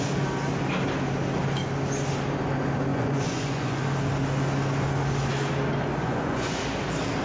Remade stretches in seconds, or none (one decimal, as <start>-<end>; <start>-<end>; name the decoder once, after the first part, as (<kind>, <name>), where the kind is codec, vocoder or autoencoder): 2.9-3.8 (vocoder, Vocos); 6.0-6.6